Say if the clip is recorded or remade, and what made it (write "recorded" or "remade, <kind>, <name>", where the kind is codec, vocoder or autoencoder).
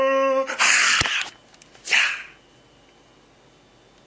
recorded